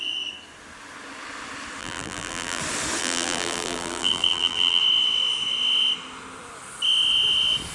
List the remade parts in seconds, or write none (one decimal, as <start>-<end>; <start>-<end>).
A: 1.8-2.6; 3.0-4.8